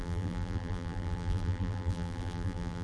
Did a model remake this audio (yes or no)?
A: yes